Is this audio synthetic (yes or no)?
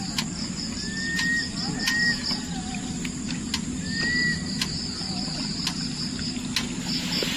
no